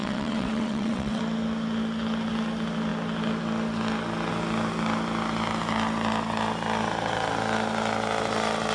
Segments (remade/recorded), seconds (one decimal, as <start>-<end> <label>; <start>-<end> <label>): 0.0-1.2 remade; 1.2-8.7 recorded